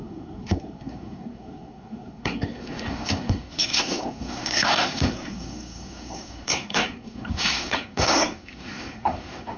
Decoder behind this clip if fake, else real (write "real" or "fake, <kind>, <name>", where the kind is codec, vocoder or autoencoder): fake, codec, SNAC